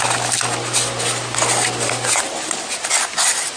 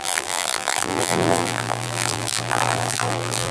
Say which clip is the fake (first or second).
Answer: second